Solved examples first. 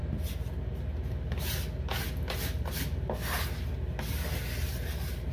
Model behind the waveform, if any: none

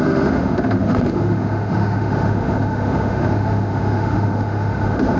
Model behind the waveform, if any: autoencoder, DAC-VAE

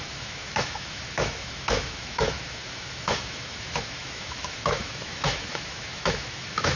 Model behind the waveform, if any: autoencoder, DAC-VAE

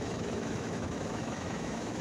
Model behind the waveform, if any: autoencoder, DAC-VAE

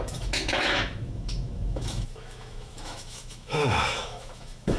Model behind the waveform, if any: autoencoder, DAC-VAE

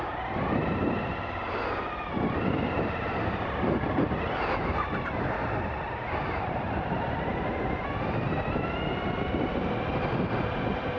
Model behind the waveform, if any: none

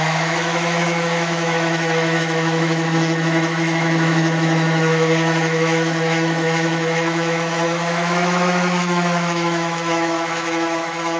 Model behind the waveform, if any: autoencoder, DAC-VAE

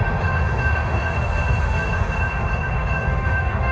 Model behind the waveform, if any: autoencoder, DAC-VAE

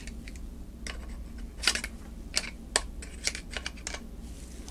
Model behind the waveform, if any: none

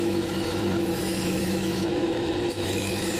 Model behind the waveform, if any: autoencoder, DAC-VAE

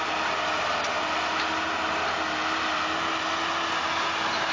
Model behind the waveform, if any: none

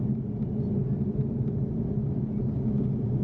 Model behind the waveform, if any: none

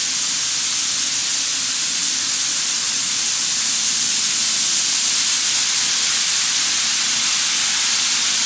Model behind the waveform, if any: none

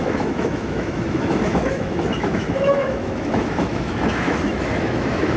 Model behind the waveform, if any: autoencoder, DAC-VAE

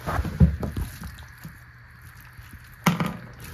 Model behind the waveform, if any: none